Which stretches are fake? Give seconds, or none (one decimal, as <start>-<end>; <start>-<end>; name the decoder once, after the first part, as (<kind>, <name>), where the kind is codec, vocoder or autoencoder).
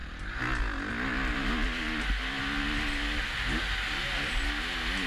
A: none